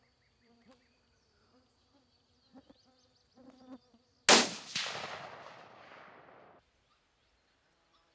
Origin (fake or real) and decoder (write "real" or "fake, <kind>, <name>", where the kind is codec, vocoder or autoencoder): real